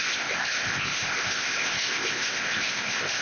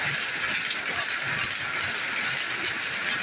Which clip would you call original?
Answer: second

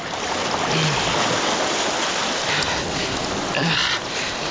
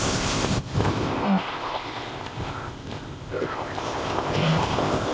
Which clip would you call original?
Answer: first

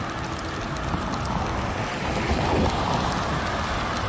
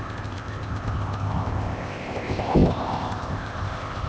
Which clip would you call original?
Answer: first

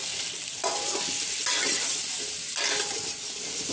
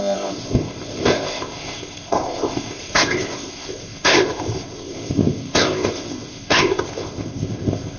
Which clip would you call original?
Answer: first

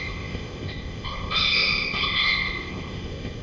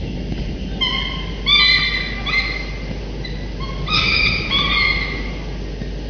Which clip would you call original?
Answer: second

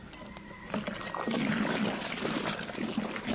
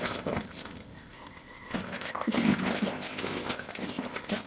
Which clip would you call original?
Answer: first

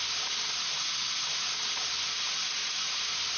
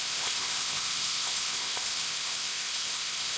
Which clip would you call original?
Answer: first